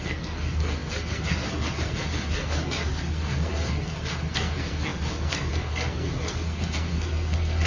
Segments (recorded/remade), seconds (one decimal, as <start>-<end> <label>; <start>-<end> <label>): 0.0-7.7 remade